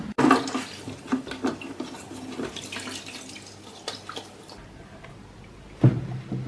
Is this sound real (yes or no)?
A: yes